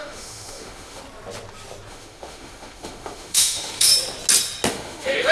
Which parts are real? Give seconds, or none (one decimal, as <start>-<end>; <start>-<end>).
1.0-1.9; 3.9-4.7